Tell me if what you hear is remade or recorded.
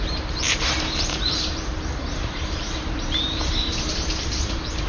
remade